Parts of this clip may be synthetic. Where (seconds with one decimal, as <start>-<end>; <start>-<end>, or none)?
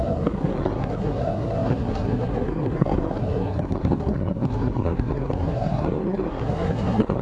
0.0-7.2